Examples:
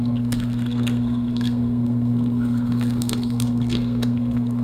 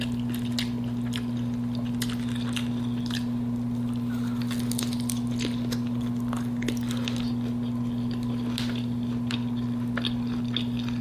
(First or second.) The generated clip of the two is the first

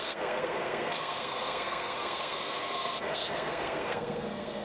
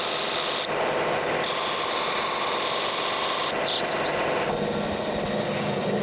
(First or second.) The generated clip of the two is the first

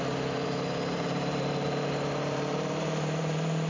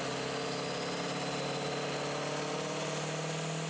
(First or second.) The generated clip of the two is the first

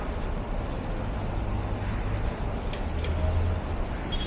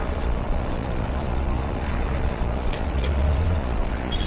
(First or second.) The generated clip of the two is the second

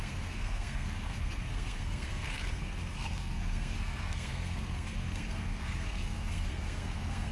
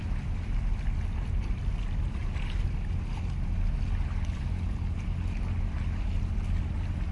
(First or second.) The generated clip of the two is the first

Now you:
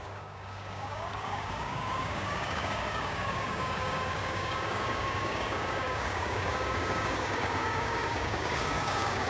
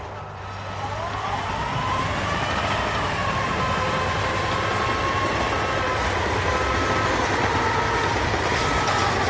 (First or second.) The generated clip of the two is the first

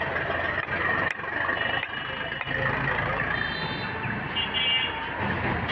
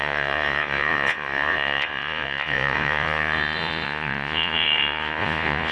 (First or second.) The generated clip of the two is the second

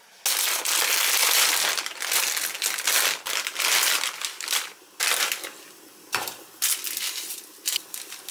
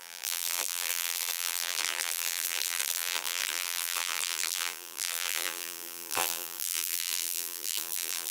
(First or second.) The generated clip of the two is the second